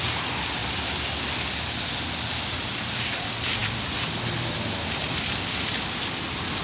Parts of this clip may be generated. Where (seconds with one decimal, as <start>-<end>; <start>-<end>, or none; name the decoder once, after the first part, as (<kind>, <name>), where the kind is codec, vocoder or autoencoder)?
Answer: none